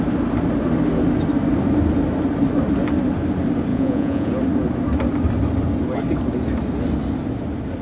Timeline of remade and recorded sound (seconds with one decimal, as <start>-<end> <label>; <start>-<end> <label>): 0.0-3.7 recorded; 3.7-4.3 remade; 4.3-7.8 recorded